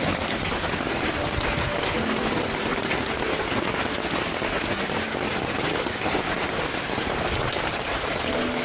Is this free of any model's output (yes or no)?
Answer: yes